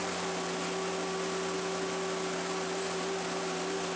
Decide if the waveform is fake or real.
real